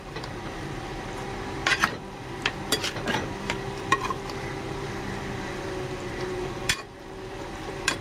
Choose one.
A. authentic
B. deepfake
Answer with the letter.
B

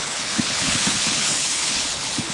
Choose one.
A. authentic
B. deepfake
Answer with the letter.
B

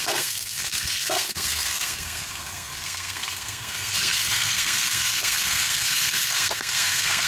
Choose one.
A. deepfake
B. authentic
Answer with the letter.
A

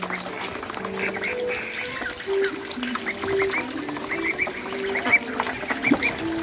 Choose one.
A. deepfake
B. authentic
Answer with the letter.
B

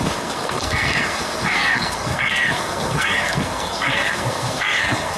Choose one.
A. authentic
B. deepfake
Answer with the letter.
B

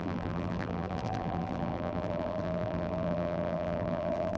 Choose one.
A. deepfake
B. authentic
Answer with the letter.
A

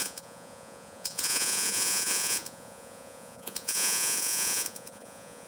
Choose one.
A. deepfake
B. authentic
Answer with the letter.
A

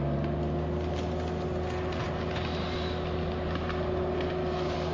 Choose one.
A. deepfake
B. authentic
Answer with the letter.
B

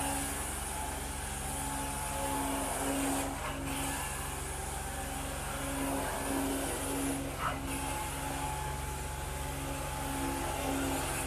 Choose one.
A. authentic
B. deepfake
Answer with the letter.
A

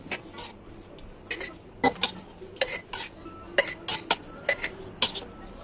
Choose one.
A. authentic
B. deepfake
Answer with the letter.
A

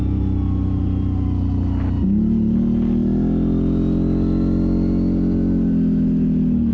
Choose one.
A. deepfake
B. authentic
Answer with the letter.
B